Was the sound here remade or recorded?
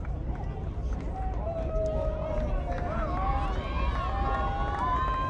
recorded